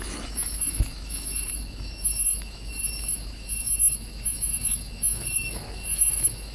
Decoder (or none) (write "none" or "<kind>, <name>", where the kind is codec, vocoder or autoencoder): autoencoder, DAC-VAE